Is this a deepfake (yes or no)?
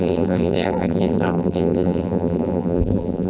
yes